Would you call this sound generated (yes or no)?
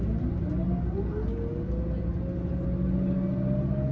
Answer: no